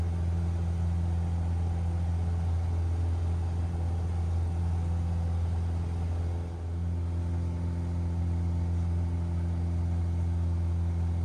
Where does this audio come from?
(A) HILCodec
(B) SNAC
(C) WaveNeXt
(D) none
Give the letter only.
D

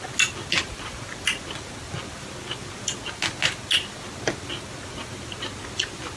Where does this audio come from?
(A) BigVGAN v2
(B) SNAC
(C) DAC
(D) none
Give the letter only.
D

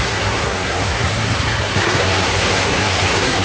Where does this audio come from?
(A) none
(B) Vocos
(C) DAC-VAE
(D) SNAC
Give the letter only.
D